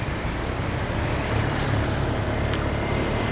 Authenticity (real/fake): real